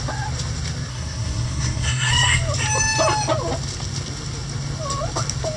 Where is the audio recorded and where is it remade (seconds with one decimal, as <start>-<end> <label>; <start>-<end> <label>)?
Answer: 0.0-0.9 recorded; 0.9-2.1 remade; 2.1-5.6 recorded